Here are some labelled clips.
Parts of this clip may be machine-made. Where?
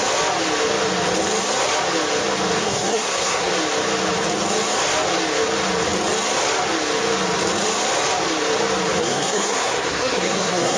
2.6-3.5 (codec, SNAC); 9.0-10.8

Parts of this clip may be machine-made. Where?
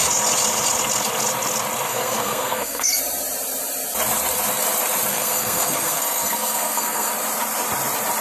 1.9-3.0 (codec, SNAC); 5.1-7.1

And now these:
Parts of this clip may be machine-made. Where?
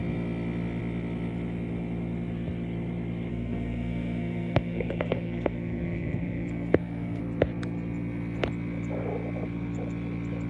3.3-7.2 (codec, SNAC)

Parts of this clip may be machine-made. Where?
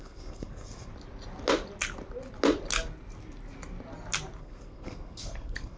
0.0-0.9 (codec, SNAC); 4.4-5.8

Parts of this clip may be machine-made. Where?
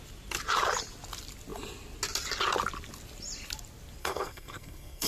4.0-5.1 (codec, SNAC)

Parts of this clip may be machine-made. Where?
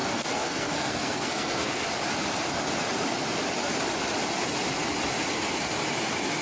0.0-1.9 (codec, SNAC)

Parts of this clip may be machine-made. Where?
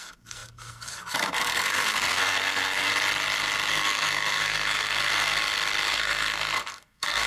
0.0-2.9 (codec, SNAC); 3.7-5.4; 5.9-7.3